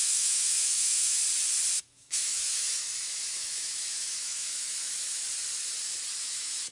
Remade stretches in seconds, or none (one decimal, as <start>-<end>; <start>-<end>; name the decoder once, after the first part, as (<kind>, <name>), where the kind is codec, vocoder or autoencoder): 0.0-1.2 (autoencoder, DAC-VAE); 1.8-5.2; 6.2-6.7